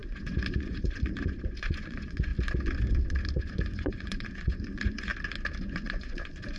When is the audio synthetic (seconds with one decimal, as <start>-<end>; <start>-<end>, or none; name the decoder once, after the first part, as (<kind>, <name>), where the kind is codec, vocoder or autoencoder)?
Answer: 0.0-2.3 (vocoder, Vocos); 3.4-5.1; 5.6-6.6